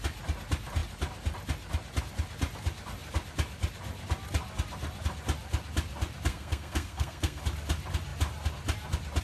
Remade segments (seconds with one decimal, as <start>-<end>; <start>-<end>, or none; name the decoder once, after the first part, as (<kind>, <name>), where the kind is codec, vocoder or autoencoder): 6.3-7.4 (codec, SNAC)